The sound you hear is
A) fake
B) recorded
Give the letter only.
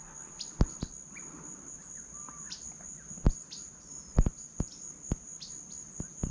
B